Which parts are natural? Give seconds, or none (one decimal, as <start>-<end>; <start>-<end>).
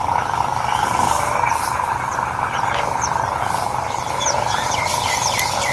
0.0-5.7